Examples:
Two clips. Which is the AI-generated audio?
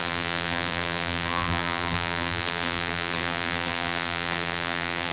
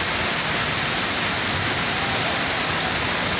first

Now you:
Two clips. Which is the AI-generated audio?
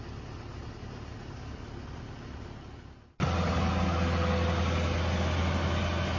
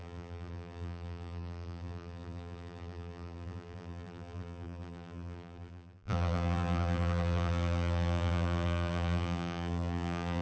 second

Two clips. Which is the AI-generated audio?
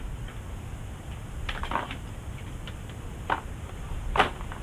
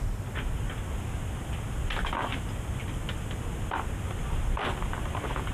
first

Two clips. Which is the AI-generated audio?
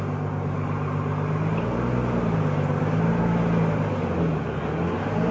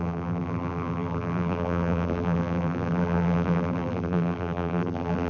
second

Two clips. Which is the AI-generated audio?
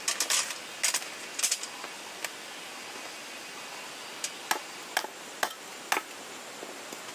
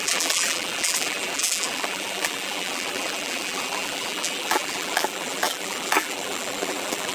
second